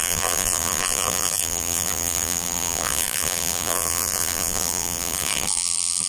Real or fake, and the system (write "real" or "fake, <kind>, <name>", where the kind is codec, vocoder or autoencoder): fake, vocoder, BigVGAN v2